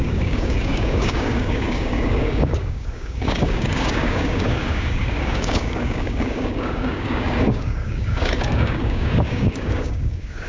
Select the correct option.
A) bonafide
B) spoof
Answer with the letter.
B